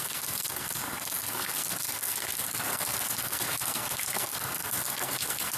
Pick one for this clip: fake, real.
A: fake